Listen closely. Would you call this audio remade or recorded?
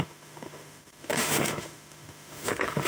remade